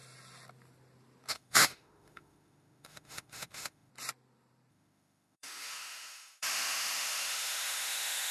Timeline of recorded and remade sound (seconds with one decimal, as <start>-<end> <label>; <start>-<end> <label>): 0.0-1.3 recorded; 1.3-3.9 remade; 3.9-4.7 recorded; 4.7-8.3 remade